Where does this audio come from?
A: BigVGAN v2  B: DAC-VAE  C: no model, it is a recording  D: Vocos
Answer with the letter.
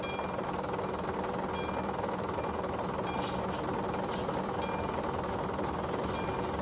C